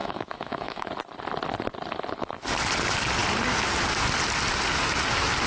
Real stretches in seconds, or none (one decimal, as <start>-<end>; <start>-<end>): 0.9-5.5